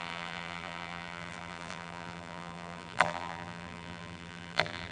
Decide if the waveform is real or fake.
fake